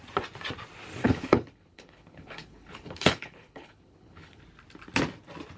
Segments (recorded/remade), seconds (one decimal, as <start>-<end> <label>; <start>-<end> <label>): 0.0-1.0 recorded; 1.0-4.4 remade; 4.4-5.6 recorded